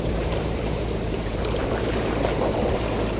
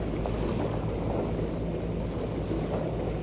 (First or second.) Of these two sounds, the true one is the second